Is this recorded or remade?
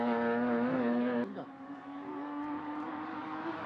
remade